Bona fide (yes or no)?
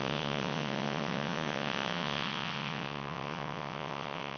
no